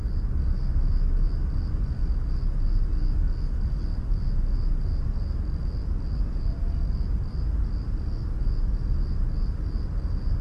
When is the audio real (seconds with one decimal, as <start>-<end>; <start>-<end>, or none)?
0.0-10.4